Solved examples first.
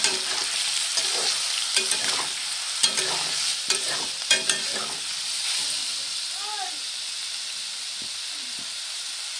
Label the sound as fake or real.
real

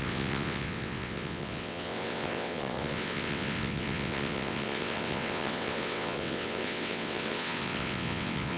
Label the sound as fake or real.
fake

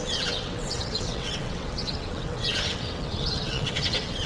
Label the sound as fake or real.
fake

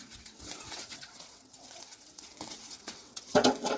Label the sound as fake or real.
fake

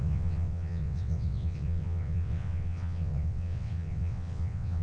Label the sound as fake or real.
fake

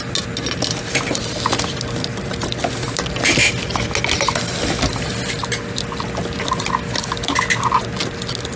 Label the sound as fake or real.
real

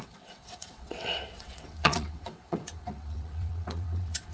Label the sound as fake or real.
fake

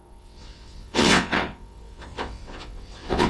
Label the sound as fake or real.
fake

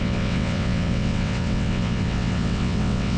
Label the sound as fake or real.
fake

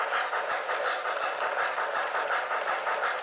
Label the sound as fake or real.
real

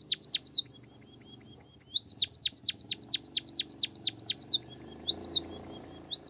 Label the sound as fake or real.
real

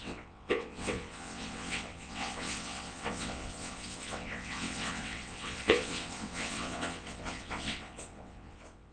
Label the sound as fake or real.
fake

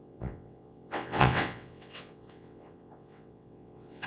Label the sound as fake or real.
fake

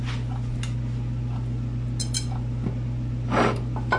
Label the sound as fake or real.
real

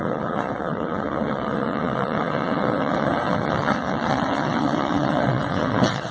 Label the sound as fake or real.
fake